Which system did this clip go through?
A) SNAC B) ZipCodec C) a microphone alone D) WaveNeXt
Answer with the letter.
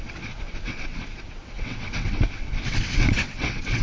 D